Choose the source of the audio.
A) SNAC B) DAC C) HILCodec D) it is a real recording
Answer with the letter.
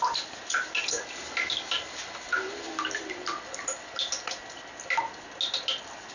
D